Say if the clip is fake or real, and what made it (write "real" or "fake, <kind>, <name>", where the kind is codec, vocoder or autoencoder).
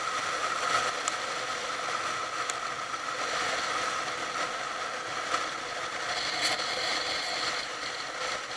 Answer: real